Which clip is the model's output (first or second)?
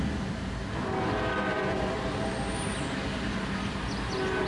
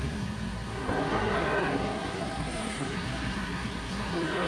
second